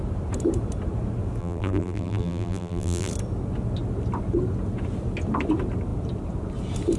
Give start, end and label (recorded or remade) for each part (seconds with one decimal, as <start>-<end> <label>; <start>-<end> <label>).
0.0-1.4 recorded; 1.4-3.1 remade; 3.1-7.0 recorded